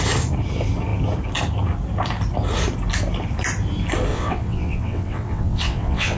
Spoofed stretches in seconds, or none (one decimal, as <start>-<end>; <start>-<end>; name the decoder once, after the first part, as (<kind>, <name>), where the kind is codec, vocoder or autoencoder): 4.1-6.2 (vocoder, WaveNeXt)